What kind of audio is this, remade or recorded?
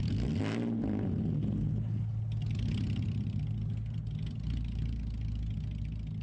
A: recorded